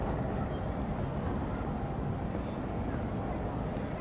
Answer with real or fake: real